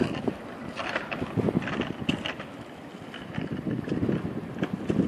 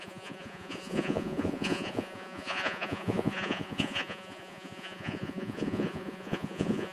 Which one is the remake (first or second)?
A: second